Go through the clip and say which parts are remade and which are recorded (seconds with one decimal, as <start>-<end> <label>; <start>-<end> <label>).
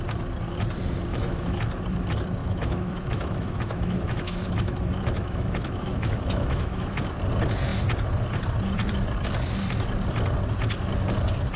0.0-1.1 recorded; 1.1-1.6 remade; 1.6-2.4 recorded; 2.4-7.0 remade; 7.0-11.6 recorded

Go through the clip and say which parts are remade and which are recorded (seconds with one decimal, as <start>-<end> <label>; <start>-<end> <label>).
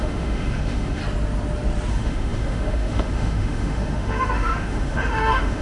0.0-1.0 remade; 1.0-1.9 recorded; 1.9-5.6 remade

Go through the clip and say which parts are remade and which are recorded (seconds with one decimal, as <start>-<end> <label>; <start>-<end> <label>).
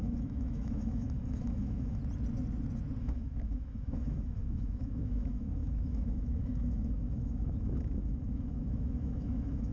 0.0-2.0 remade; 2.0-3.0 recorded; 3.0-9.7 remade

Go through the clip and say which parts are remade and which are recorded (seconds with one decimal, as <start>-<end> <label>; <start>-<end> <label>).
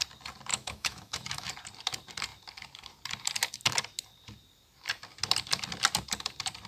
0.0-0.5 recorded; 0.5-1.5 remade; 1.5-6.7 recorded